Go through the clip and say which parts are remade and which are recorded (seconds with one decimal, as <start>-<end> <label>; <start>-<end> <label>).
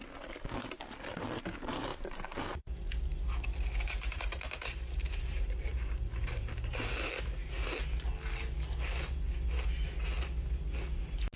0.0-1.9 recorded; 1.9-2.5 remade; 2.5-4.1 recorded; 4.1-7.8 remade; 7.8-11.4 recorded